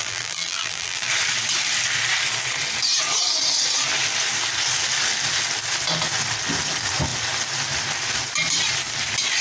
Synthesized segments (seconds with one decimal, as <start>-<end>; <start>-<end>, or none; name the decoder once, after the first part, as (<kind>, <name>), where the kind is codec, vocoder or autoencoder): 0.0-1.1 (vocoder, BigVGAN v2)